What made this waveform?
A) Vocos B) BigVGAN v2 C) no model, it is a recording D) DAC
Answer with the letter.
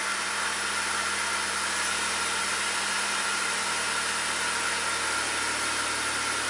C